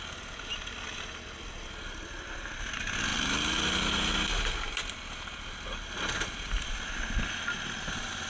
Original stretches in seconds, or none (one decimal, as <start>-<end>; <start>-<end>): 0.0-8.3